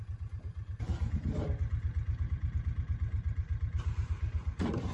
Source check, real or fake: real